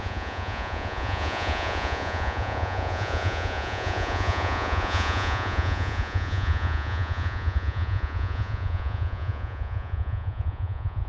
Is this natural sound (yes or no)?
no